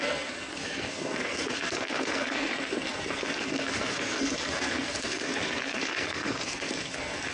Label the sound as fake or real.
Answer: fake